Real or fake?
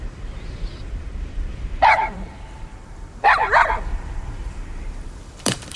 fake